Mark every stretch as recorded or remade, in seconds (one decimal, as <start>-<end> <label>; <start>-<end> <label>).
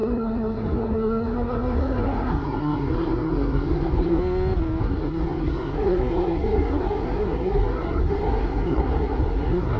0.0-4.2 remade; 4.2-4.8 recorded; 4.8-9.8 remade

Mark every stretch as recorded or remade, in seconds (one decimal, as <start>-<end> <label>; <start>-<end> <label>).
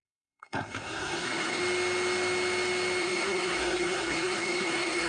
0.0-1.6 remade; 1.6-3.0 recorded; 3.0-5.1 remade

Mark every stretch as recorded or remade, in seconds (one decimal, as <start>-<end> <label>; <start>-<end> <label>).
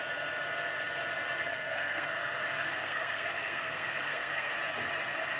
0.0-1.4 recorded; 1.4-4.5 remade; 4.5-5.4 recorded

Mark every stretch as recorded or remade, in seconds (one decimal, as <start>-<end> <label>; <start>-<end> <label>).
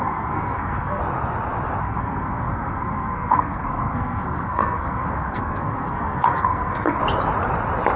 0.0-1.0 remade; 1.0-1.8 recorded; 1.8-7.0 remade; 7.0-8.0 recorded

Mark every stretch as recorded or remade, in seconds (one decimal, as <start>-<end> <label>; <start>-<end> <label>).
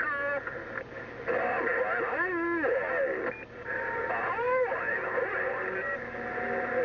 0.0-6.8 recorded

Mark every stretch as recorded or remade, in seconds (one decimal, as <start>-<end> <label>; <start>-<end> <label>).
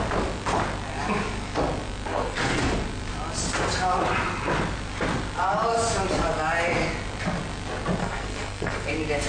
0.0-2.1 recorded; 2.1-2.6 remade; 2.6-8.0 recorded; 8.0-8.9 remade; 8.9-9.3 recorded